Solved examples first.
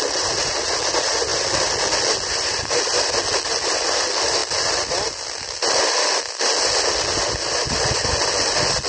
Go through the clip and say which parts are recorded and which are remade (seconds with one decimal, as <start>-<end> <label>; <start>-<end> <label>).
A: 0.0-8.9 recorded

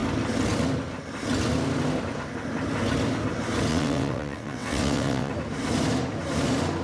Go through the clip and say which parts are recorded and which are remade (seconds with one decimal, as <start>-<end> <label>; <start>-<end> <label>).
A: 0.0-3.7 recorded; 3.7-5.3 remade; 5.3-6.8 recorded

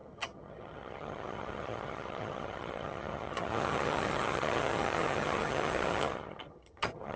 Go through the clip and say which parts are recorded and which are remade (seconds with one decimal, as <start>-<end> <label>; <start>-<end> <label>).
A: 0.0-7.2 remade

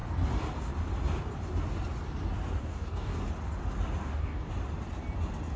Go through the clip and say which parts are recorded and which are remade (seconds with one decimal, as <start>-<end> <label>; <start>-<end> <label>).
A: 0.0-2.6 recorded; 2.6-3.2 remade; 3.2-4.0 recorded; 4.0-4.5 remade; 4.5-5.6 recorded